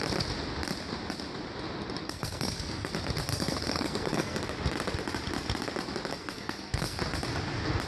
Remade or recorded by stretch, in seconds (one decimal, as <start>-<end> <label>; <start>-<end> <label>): 0.0-2.0 recorded; 2.0-2.9 remade; 2.9-3.3 recorded; 3.3-4.4 remade; 4.4-6.1 recorded; 6.1-7.0 remade; 7.0-7.9 recorded